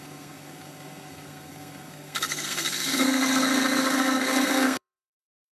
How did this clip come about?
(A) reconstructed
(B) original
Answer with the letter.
A